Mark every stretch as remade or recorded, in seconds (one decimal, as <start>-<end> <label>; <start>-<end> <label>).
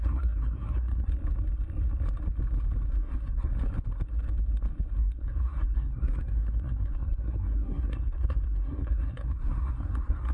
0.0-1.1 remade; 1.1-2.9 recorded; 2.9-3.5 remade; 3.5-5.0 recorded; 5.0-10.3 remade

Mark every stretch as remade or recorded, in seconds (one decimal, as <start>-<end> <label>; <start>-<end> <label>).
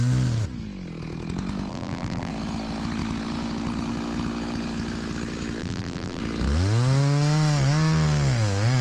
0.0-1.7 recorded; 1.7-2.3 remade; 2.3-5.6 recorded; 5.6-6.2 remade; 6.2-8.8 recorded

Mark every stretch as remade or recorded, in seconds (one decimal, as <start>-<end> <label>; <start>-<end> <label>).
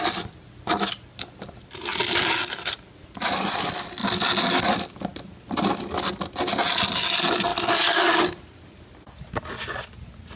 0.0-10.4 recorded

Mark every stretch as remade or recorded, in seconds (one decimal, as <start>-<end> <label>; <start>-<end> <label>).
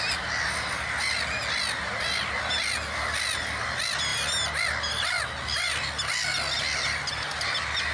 0.0-7.9 recorded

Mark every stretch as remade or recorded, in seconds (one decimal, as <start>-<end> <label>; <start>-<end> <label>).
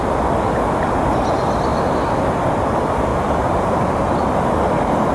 0.0-3.1 recorded; 3.1-4.2 remade; 4.2-5.1 recorded